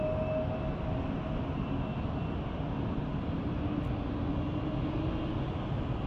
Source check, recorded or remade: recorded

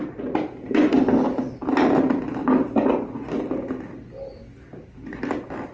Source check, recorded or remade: recorded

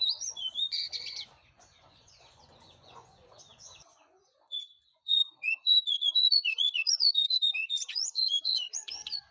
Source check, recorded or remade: remade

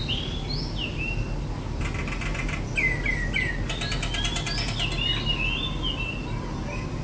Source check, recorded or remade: recorded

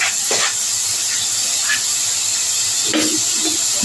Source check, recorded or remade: recorded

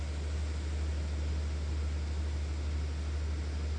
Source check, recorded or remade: recorded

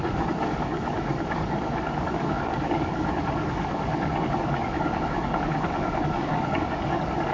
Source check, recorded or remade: remade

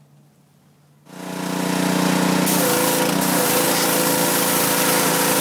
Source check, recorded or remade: recorded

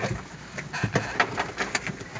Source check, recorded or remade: recorded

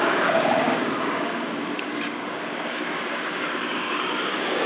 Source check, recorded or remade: remade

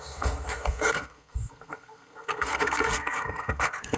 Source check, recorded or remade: remade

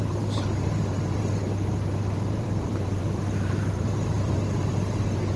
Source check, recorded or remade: remade